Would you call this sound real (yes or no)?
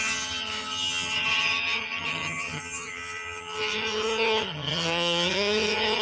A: no